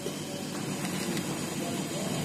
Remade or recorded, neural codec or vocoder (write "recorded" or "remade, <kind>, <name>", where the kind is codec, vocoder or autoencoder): recorded